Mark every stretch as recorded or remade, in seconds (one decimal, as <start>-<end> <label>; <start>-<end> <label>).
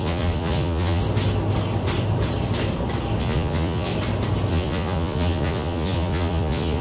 0.0-1.0 remade; 1.0-3.2 recorded; 3.2-3.9 remade; 3.9-4.5 recorded; 4.5-6.8 remade